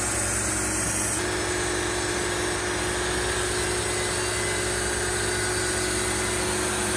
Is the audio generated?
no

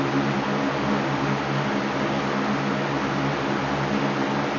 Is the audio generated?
no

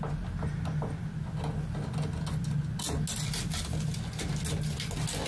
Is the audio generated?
no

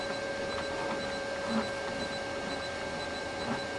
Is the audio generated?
no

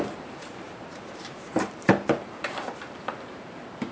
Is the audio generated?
yes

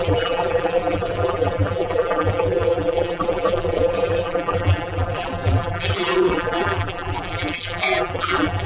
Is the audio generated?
yes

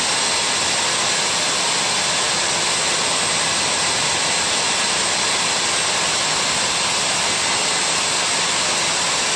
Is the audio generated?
no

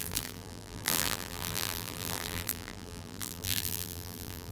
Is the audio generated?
yes